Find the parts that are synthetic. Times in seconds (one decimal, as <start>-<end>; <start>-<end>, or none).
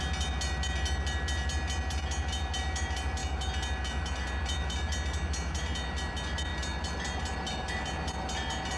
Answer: 6.5-7.7